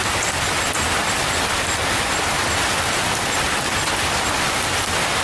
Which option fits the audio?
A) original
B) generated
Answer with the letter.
A